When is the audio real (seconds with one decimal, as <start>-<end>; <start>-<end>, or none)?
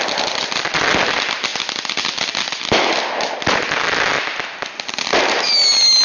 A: 0.0-6.0